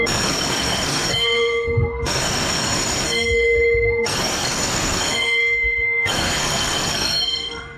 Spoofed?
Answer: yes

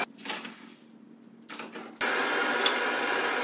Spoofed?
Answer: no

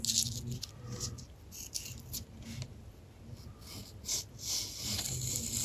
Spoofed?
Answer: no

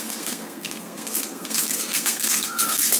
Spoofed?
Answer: yes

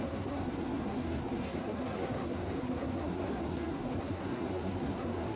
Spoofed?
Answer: yes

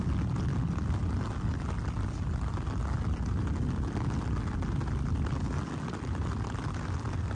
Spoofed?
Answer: no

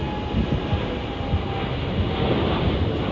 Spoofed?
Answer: no